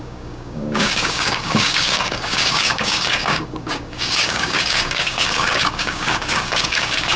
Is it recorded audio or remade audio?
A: remade